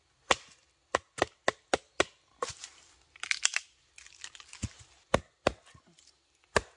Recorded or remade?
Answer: recorded